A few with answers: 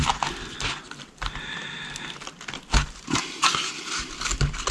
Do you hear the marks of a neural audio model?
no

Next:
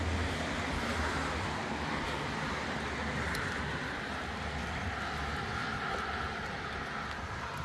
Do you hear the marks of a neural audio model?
no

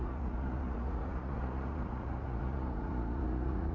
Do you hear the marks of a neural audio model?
yes